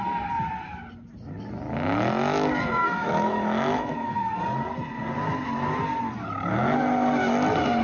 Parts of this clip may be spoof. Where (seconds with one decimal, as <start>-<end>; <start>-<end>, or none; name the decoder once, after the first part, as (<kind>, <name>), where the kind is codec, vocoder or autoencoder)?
2.8-4.4 (autoencoder, DAC-VAE)